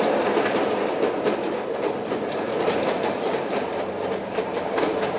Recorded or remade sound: remade